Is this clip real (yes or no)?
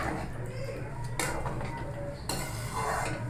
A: yes